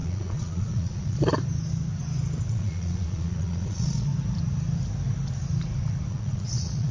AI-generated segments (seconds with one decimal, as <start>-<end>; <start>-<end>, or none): 0.0-1.3; 2.5-4.1; 6.1-6.9